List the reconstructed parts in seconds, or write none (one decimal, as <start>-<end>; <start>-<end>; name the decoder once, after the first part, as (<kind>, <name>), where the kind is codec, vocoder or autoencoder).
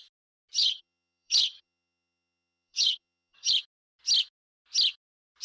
0.6-3.5 (vocoder, HiFi-GAN)